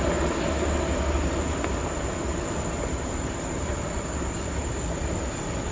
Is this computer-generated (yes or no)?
no